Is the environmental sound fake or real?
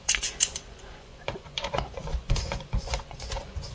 fake